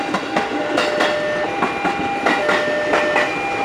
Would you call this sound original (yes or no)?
yes